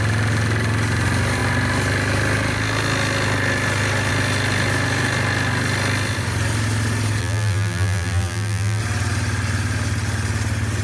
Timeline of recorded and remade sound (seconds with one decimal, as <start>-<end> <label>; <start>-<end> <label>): 0.0-7.2 recorded; 7.2-8.8 remade; 8.8-10.8 recorded